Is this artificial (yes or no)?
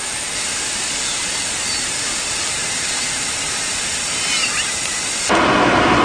no